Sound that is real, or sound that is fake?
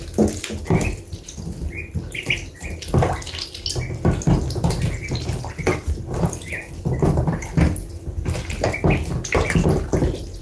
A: real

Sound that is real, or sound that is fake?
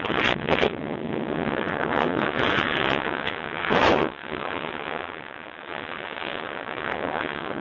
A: fake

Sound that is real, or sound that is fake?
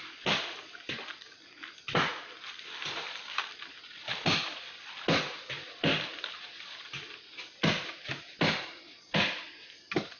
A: real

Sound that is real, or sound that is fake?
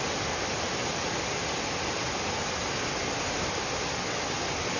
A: real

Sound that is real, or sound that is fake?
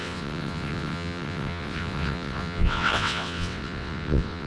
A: fake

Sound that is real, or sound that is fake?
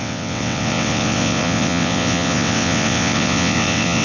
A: fake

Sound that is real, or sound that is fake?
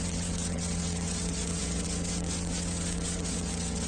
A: fake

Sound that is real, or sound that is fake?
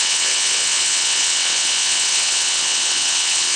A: fake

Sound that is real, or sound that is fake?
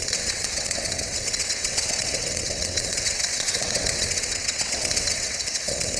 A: fake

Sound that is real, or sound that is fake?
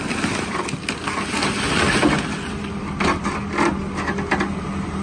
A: real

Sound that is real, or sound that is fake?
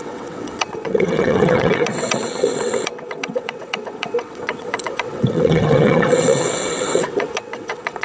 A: fake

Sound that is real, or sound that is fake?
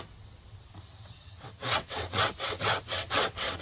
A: fake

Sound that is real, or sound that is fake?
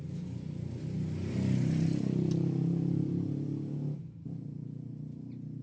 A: real